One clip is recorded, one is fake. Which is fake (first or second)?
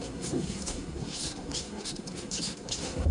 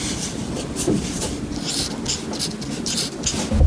first